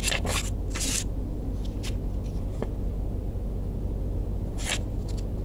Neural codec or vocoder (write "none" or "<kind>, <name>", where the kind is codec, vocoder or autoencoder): none